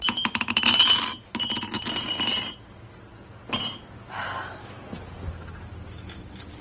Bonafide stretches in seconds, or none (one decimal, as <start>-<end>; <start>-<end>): 0.0-6.6